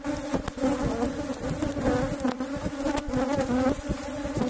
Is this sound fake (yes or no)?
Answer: no